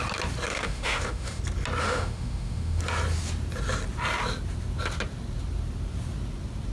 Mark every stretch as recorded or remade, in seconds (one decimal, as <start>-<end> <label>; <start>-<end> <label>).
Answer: 0.0-0.5 recorded; 0.5-1.4 remade; 1.4-1.8 recorded; 1.8-2.8 remade; 2.8-6.7 recorded